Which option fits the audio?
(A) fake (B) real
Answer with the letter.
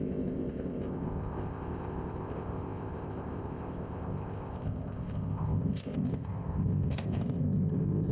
A